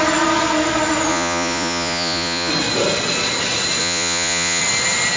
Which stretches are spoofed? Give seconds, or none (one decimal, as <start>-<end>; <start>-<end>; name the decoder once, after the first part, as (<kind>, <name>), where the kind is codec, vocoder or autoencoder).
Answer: 1.1-2.5 (vocoder, Vocos); 3.8-4.6